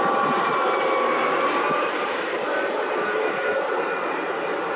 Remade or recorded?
remade